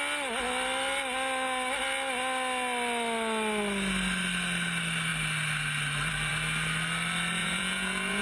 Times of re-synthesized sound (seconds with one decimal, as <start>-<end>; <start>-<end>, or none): 7.4-8.2